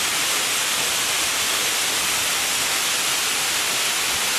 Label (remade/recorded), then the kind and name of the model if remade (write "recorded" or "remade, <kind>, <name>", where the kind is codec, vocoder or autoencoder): recorded